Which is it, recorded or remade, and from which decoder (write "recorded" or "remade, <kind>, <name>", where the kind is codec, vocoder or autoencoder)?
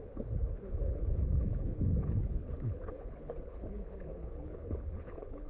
remade, codec, HILCodec